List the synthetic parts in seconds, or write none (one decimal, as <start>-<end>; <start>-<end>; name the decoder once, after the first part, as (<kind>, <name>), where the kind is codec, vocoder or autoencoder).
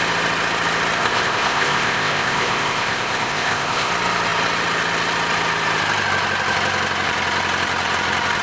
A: 1.0-3.9 (codec, ZipCodec)